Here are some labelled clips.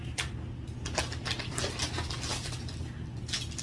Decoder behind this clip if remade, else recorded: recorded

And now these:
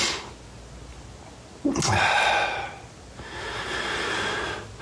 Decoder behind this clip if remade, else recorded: recorded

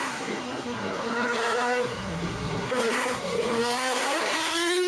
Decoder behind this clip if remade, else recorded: remade, codec, SNAC